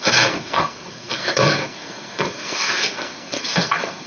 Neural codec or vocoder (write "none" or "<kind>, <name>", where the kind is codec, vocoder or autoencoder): codec, SNAC